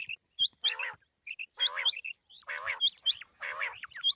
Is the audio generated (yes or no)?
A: yes